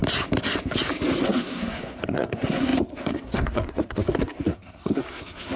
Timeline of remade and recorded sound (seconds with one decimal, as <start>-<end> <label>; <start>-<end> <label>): 0.0-1.2 recorded; 1.2-5.6 remade